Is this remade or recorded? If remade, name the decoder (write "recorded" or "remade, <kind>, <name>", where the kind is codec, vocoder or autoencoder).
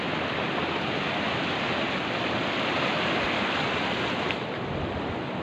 recorded